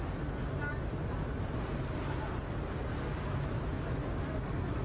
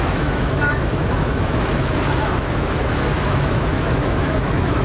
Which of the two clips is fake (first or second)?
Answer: second